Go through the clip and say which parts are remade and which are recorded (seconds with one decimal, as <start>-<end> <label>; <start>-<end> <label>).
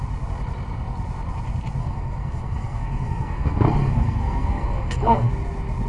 0.0-1.8 recorded; 1.8-5.3 remade; 5.3-5.9 recorded